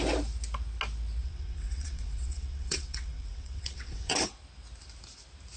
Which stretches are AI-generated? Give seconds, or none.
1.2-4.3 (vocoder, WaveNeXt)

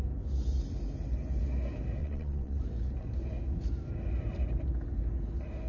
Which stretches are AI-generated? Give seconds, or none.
2.0-2.6 (vocoder, WaveNeXt)

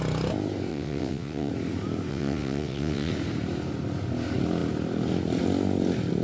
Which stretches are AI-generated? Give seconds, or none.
0.7-1.5 (vocoder, WaveNeXt); 2.1-3.1

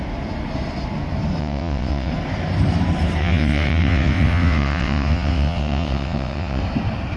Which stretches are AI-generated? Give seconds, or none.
1.4-2.1 (vocoder, WaveNeXt); 3.2-6.6